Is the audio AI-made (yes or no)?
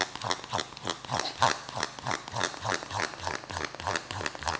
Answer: no